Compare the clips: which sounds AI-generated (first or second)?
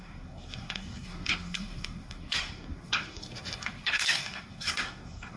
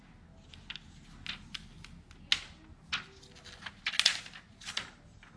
first